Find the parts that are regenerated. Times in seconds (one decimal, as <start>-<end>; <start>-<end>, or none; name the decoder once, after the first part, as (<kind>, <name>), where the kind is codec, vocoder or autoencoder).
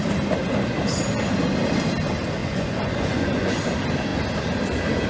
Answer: 2.4-3.5 (vocoder, Vocos)